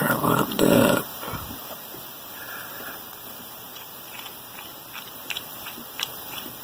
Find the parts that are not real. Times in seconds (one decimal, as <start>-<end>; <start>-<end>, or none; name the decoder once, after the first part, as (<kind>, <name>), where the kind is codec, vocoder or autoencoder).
0.0-1.1 (vocoder, BigVGAN v2); 2.9-3.7; 4.6-6.6

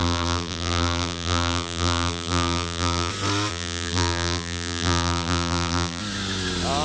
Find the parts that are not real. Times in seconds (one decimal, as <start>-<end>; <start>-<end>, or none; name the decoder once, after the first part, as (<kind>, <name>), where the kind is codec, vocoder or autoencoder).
0.0-3.1 (vocoder, BigVGAN v2); 3.5-6.0

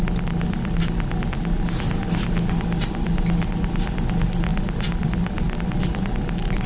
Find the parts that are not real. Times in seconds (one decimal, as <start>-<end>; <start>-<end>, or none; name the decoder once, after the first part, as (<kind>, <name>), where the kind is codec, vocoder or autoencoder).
4.5-6.3 (vocoder, BigVGAN v2)

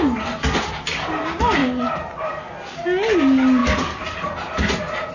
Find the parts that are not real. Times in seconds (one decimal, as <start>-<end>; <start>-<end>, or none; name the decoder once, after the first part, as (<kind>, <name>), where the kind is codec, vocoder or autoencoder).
none

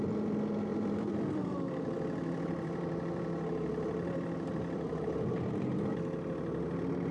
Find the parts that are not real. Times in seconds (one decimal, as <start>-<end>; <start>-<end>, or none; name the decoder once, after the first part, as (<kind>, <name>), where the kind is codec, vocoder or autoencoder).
0.7-5.0 (vocoder, BigVGAN v2)

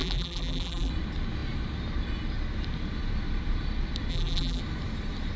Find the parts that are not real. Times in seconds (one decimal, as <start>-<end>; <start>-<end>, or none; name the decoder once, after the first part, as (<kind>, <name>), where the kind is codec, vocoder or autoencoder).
0.0-0.9 (vocoder, BigVGAN v2); 4.1-4.6

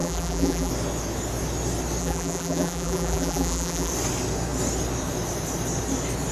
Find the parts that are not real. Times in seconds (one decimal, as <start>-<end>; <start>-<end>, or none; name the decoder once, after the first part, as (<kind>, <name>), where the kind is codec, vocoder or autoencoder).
0.0-0.7 (vocoder, BigVGAN v2); 2.0-3.9